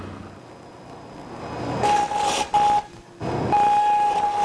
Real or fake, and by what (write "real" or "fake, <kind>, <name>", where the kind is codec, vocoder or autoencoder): real